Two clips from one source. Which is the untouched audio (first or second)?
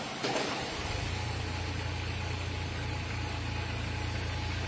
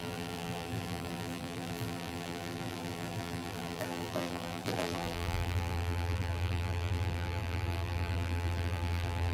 first